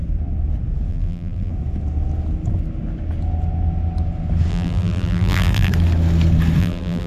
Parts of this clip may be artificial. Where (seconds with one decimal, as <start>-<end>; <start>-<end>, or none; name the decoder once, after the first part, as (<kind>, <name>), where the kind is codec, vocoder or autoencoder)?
0.9-1.5 (vocoder, BigVGAN v2); 4.5-5.7; 6.6-7.1